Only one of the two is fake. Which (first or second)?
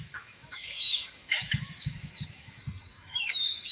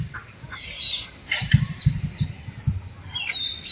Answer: first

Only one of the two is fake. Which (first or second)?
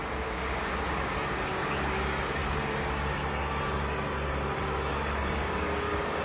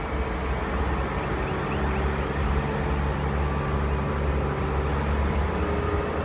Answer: first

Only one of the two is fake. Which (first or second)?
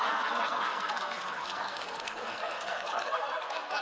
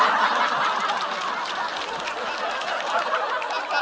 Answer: first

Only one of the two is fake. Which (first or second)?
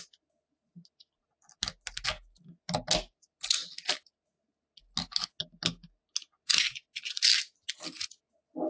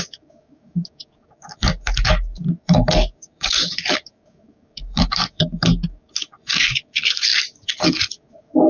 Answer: second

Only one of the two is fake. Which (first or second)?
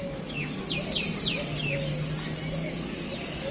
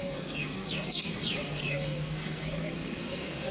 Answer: second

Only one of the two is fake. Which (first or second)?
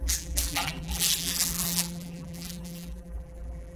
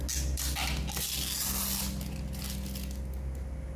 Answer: first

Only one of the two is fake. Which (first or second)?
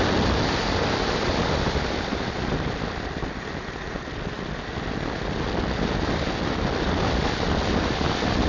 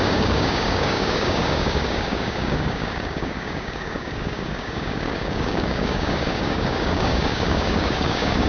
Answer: second